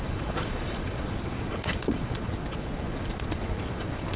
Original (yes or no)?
no